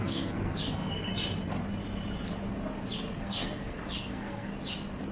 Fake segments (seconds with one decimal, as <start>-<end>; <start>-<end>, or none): 0.0-1.1; 3.2-4.5